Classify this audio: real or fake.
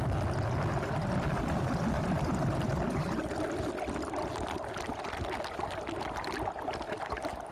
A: real